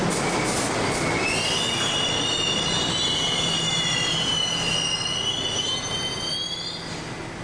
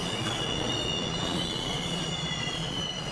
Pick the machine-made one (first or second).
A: second